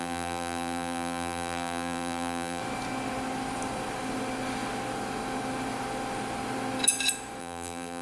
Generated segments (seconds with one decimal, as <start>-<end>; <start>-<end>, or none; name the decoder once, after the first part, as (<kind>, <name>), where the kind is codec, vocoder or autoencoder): 0.0-2.6 (vocoder, BigVGAN v2); 7.4-8.0

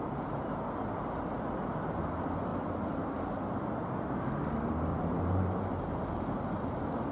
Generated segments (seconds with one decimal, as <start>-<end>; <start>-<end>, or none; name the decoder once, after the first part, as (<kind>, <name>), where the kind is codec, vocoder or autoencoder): 4.9-5.6 (vocoder, BigVGAN v2)